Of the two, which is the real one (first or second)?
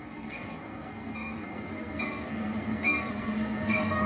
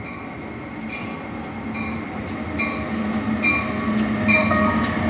second